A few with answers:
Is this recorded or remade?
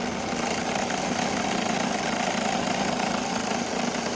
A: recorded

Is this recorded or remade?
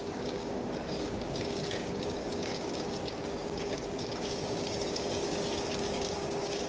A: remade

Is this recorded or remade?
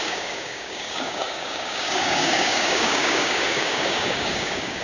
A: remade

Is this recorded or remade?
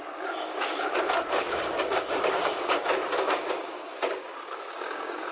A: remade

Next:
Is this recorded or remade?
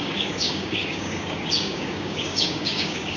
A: remade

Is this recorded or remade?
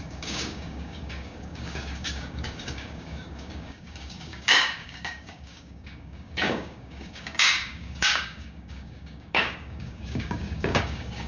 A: remade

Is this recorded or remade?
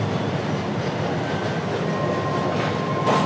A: recorded